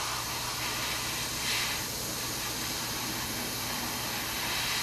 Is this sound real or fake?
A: real